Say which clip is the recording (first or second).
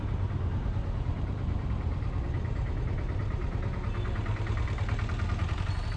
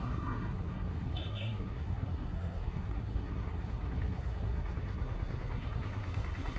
first